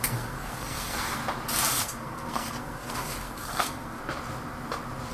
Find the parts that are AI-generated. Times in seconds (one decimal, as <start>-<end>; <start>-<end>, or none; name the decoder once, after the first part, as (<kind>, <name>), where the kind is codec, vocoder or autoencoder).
0.0-1.2 (codec, SNAC); 1.8-4.0